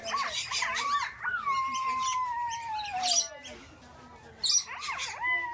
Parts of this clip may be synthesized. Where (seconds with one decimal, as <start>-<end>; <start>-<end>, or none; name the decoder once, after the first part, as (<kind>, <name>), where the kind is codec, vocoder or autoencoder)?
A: 0.0-3.3 (vocoder, BigVGAN v2)